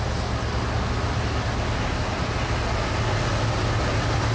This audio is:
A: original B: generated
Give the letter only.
A